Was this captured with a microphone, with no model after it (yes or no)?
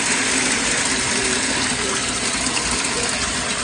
yes